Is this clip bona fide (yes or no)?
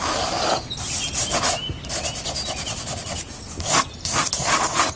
yes